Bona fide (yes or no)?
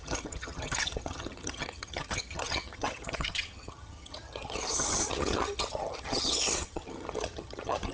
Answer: no